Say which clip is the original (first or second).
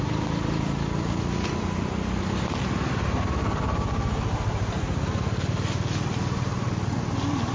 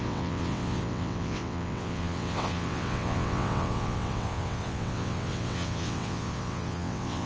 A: first